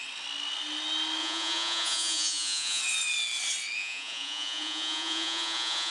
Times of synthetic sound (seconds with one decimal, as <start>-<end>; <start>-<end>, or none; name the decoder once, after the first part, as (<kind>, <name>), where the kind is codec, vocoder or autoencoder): 1.2-2.8 (vocoder, Vocos); 3.8-5.9